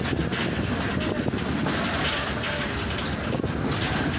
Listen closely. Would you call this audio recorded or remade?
recorded